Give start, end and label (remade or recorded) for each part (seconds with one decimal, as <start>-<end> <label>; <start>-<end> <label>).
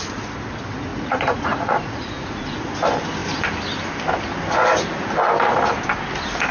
0.0-0.9 recorded; 0.9-2.7 remade; 2.7-6.5 recorded